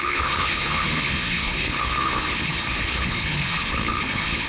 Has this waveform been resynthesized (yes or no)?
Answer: yes